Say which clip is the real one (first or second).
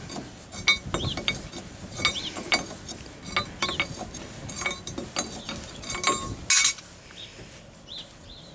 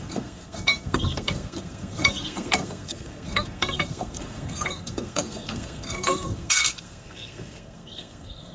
first